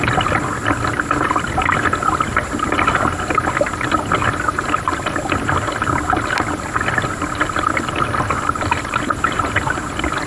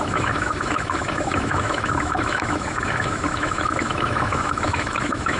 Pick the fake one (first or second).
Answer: second